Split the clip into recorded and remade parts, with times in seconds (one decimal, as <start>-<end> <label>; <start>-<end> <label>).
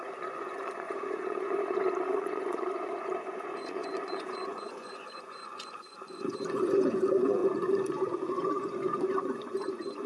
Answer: 0.0-10.1 remade